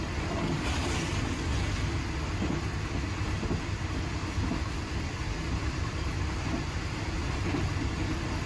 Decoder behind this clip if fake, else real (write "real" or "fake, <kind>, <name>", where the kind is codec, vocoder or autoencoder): real